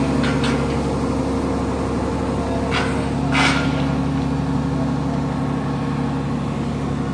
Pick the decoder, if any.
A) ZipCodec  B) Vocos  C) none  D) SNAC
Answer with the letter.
C